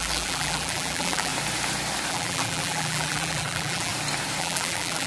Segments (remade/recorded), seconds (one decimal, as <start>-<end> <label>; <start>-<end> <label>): 0.0-1.3 remade; 1.3-2.1 recorded; 2.1-3.9 remade; 3.9-4.4 recorded; 4.4-5.1 remade

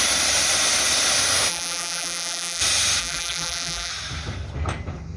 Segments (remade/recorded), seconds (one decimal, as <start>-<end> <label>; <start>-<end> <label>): 0.0-1.5 recorded; 1.5-2.6 remade; 2.6-3.0 recorded; 3.0-3.9 remade; 3.9-5.2 recorded

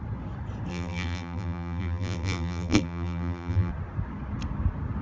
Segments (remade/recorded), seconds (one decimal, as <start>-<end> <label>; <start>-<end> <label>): 0.0-0.7 recorded; 0.7-3.7 remade; 3.7-5.0 recorded

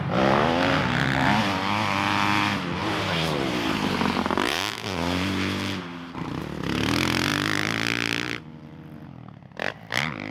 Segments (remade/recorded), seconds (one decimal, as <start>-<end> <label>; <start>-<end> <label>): 0.0-2.8 recorded; 2.8-6.4 remade; 6.4-10.3 recorded